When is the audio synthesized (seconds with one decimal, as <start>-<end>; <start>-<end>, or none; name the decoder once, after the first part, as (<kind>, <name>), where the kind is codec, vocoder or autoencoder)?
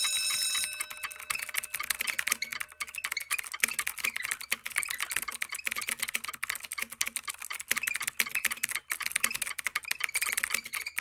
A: none